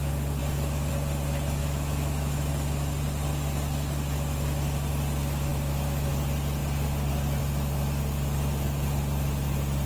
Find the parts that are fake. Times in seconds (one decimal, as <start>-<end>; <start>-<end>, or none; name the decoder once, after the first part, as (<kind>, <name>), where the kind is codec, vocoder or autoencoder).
1.6-2.5 (autoencoder, DAC-VAE); 5.5-6.1